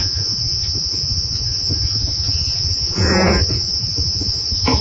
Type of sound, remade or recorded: remade